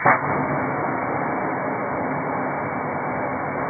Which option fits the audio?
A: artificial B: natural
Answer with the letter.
B